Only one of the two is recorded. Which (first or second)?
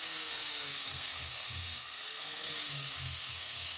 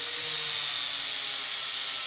second